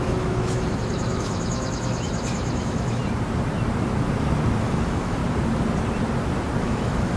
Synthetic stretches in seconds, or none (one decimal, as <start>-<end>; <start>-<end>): 0.0-3.0; 4.6-5.2; 6.6-7.2